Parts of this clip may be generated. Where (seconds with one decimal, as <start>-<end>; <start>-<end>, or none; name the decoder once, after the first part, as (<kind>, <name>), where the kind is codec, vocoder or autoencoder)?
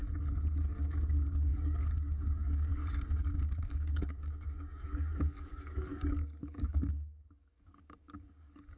0.7-2.8 (codec, DAC); 3.7-8.8